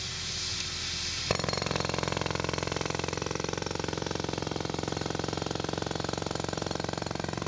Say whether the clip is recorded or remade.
recorded